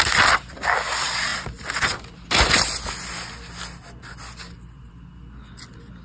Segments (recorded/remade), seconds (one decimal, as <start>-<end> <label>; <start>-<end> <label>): 0.0-6.0 recorded